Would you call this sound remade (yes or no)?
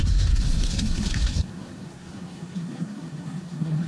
yes